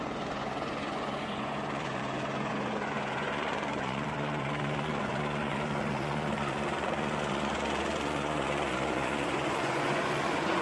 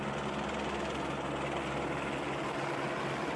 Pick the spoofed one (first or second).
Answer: first